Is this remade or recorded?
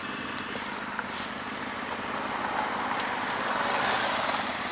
recorded